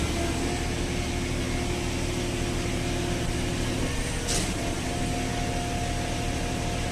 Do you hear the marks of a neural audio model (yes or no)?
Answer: no